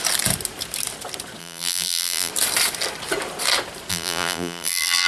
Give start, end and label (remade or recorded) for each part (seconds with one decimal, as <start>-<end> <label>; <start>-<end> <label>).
0.0-1.4 recorded; 1.4-2.3 remade; 2.3-3.9 recorded; 3.9-5.1 remade

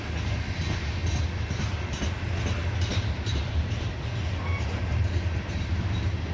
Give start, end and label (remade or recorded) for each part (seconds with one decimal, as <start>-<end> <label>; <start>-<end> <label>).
0.0-2.9 recorded; 2.9-6.3 remade

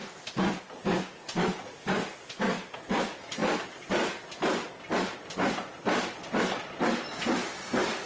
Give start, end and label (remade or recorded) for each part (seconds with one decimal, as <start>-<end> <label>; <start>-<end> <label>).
0.0-0.6 remade; 0.6-3.4 recorded; 3.4-6.2 remade; 6.2-8.1 recorded

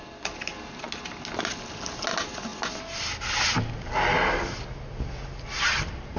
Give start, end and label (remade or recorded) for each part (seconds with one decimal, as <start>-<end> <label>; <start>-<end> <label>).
0.0-6.2 recorded

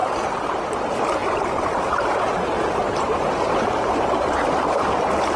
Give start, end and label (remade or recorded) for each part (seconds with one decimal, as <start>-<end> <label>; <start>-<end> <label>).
0.0-0.6 remade; 0.6-1.2 recorded; 1.2-4.4 remade; 4.4-5.4 recorded

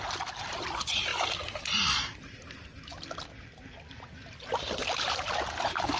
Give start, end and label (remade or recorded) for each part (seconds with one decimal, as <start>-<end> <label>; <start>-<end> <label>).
0.0-6.0 recorded